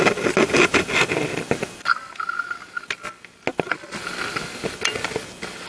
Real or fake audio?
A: real